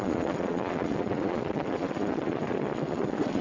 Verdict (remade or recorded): remade